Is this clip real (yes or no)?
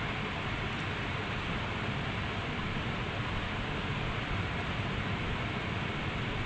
yes